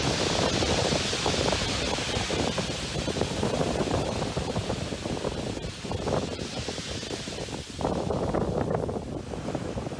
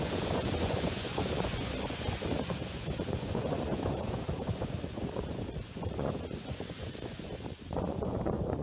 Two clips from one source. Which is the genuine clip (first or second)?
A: first